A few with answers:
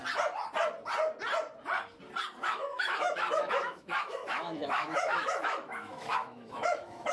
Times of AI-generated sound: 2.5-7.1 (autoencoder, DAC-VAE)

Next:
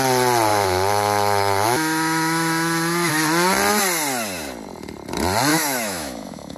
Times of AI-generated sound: 0.5-3.1 (autoencoder, DAC-VAE); 5.5-6.6

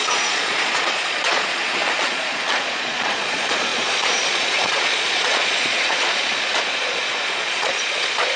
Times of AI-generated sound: 0.0-8.4 (vocoder, Vocos)

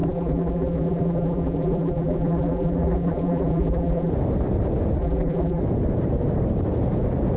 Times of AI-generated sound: 0.0-4.1 (vocoder, BigVGAN v2); 5.0-5.6

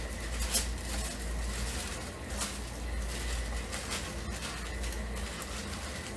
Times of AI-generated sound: none

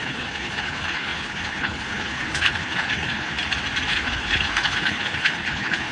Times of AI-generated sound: 0.0-3.3 (codec, HILCodec); 3.9-5.9

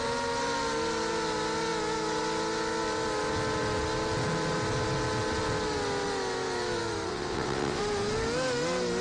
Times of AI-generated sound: 7.1-7.8 (vocoder, WaveNeXt)

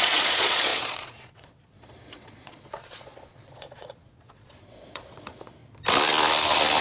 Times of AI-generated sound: 0.0-5.6 (vocoder, Vocos)